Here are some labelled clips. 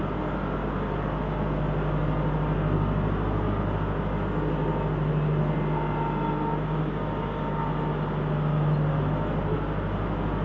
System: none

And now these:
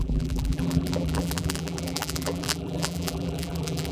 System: vocoder, BigVGAN v2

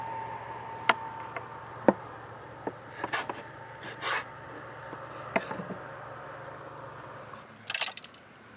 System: none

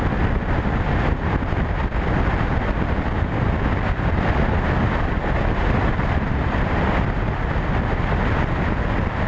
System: none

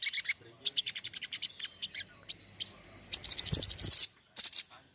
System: vocoder, BigVGAN v2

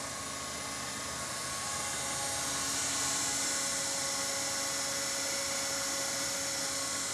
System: none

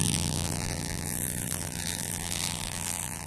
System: vocoder, BigVGAN v2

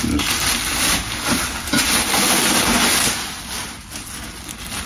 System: none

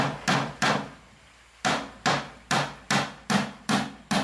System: none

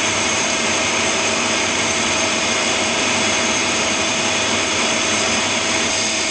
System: vocoder, BigVGAN v2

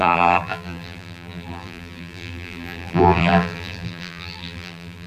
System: vocoder, BigVGAN v2